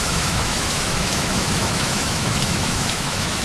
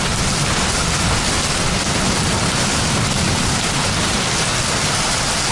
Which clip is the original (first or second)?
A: second